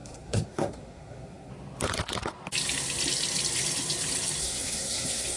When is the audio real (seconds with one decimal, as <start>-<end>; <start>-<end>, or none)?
1.5-4.4